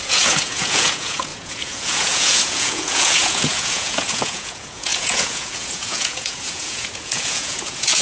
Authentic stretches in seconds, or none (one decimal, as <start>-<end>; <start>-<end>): none